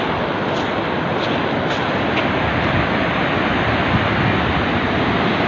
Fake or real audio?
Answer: real